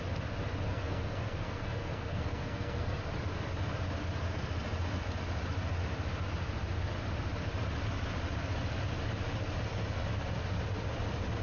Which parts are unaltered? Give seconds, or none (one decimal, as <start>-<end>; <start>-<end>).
0.0-0.7; 3.0-11.4